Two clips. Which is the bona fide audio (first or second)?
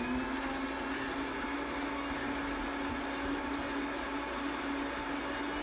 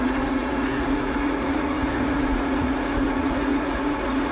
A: first